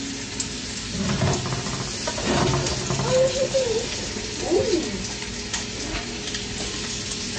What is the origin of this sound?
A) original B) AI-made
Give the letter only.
A